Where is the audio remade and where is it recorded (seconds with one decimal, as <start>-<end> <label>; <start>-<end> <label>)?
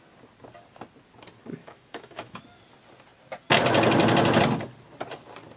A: 0.0-1.6 recorded; 1.6-2.4 remade; 2.4-5.6 recorded